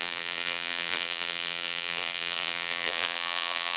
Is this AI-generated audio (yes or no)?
yes